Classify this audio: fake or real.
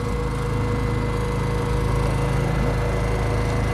real